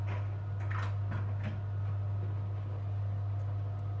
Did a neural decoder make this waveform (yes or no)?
no